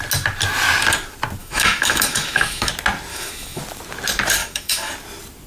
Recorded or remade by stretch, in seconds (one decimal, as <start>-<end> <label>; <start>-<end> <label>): 0.0-1.4 recorded; 1.4-2.7 remade; 2.7-3.1 recorded; 3.1-3.6 remade; 3.6-4.4 recorded; 4.4-4.9 remade; 4.9-5.5 recorded